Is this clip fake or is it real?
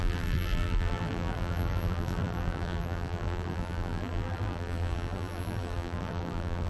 fake